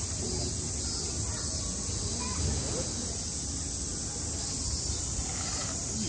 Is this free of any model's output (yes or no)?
yes